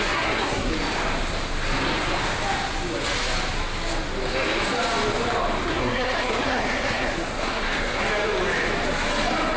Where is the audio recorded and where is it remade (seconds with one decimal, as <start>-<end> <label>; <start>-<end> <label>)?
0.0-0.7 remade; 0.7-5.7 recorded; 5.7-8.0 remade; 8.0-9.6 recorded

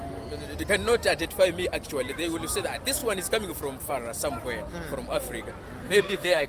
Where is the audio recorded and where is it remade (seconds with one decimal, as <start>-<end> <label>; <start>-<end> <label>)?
0.0-5.8 recorded; 5.8-6.5 remade

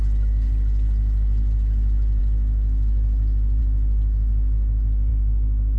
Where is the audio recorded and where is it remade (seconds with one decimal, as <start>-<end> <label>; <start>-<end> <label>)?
0.0-5.8 recorded